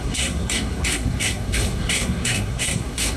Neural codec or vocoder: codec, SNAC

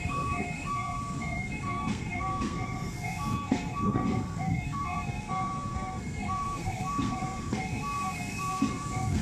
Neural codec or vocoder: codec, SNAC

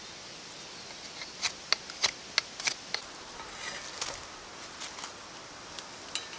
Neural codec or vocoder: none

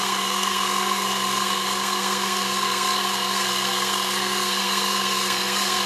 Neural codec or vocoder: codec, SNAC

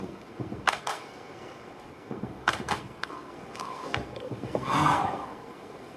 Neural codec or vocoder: codec, SNAC